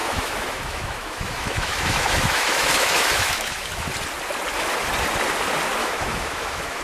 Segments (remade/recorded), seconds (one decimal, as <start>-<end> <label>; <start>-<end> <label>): 0.0-3.9 remade; 3.9-5.8 recorded; 5.8-6.8 remade